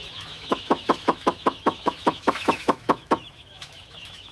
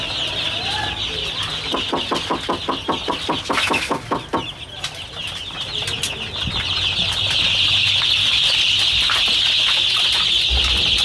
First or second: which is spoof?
first